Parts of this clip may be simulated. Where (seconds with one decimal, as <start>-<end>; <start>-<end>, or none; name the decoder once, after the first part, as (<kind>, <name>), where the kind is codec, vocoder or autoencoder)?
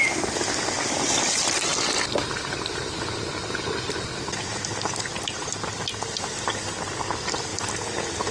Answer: none